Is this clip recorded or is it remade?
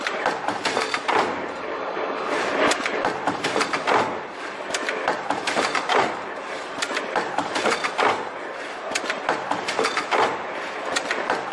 remade